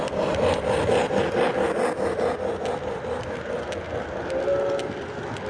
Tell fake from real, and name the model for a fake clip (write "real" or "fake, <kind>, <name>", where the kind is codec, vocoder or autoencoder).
real